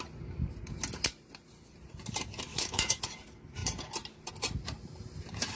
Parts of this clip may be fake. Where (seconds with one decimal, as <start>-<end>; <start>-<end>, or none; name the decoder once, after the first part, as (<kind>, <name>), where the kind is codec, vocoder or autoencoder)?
2.5-3.0 (autoencoder, DAC-VAE)